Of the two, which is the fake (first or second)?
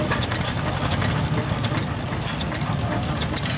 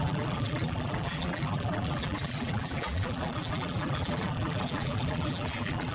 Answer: second